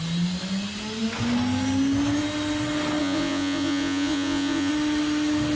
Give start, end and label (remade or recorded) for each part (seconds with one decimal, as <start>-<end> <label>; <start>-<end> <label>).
0.0-3.0 recorded; 3.0-4.7 remade; 4.7-5.6 recorded